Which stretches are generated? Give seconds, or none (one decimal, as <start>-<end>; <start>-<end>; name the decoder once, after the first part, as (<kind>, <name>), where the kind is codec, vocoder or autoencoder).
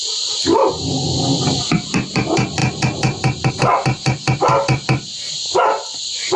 none